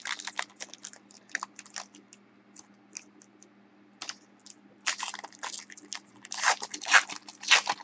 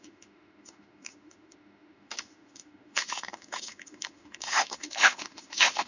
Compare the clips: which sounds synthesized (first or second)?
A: second